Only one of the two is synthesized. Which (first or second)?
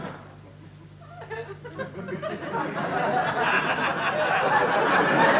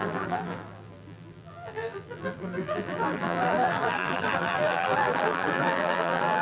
second